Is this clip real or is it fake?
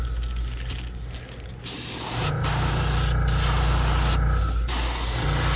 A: real